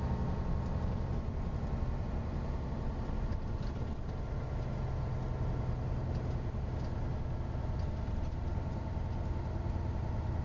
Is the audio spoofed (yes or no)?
no